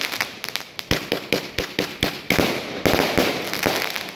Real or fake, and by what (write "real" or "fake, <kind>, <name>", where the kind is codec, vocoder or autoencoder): real